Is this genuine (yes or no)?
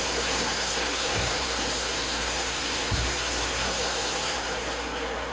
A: no